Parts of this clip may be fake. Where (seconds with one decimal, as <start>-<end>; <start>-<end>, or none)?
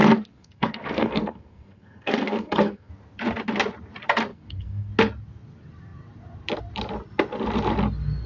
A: 0.0-2.9; 4.3-4.9